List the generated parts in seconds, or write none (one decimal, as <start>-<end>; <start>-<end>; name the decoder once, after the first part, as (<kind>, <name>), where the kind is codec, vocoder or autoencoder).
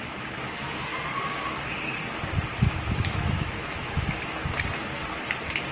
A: 0.0-0.9 (autoencoder, DAC-VAE); 2.6-4.4